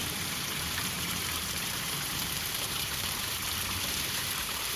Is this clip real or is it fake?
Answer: fake